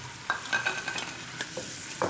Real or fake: real